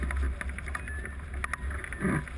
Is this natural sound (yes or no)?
yes